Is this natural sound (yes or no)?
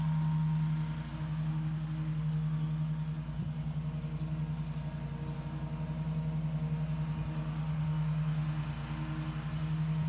yes